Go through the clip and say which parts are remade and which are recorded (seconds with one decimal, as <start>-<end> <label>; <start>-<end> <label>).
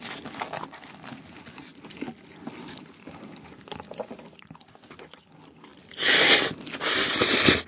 0.0-7.7 recorded